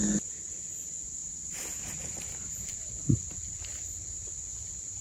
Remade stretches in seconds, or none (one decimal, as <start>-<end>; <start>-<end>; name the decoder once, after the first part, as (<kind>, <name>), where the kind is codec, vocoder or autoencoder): 1.2-3.6 (vocoder, BigVGAN v2)